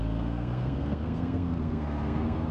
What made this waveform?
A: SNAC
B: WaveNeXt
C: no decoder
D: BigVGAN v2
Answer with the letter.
A